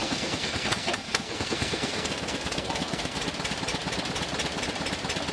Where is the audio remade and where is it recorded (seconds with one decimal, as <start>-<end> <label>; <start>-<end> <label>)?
0.0-3.2 remade; 3.2-5.3 recorded